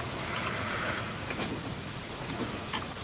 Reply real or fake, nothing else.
fake